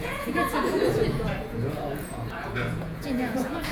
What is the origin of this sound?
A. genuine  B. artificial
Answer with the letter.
B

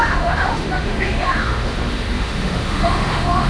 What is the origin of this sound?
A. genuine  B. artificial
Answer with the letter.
B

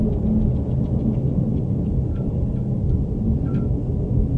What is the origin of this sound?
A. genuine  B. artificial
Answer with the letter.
A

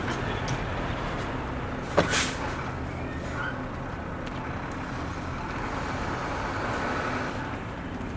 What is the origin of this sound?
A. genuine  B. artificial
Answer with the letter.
A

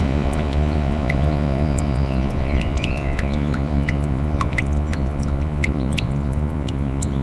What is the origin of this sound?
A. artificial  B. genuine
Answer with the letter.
A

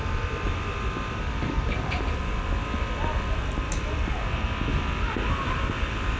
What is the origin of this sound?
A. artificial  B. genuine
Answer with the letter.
B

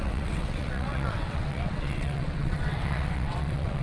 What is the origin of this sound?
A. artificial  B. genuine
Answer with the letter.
A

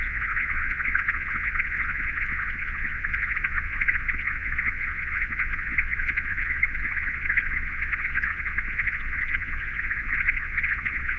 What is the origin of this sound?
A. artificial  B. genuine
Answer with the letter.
A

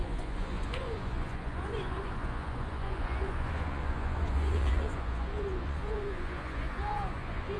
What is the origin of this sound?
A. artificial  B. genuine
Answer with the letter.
A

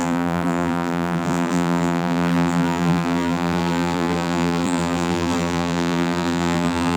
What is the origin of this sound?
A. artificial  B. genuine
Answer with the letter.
A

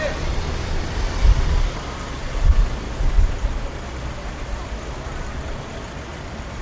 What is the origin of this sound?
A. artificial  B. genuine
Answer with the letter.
B